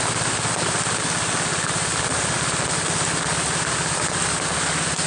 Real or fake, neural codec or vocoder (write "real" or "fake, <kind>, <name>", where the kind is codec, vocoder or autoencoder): real